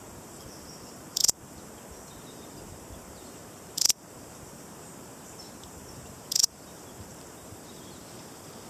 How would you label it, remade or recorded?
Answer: remade